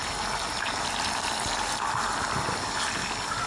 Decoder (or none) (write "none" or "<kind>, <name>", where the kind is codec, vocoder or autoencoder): none